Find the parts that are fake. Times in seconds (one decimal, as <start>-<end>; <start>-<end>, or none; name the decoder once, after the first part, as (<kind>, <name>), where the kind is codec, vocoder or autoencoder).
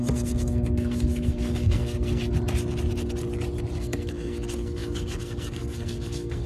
0.0-2.2 (codec, SNAC); 3.8-6.5